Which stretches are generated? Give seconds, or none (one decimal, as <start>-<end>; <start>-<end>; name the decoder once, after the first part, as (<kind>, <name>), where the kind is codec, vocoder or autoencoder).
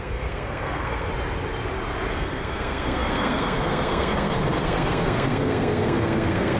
0.0-1.1 (codec, SNAC); 2.1-6.6